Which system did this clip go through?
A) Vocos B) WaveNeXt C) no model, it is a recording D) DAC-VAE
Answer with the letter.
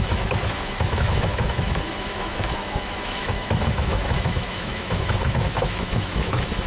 D